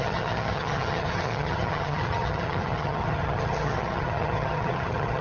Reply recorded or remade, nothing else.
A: remade